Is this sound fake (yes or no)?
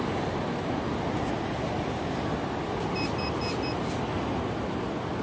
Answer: no